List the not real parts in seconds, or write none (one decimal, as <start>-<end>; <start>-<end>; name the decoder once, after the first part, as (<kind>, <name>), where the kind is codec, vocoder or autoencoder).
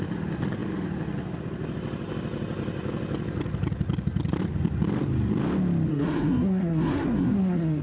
5.9-7.8 (codec, SNAC)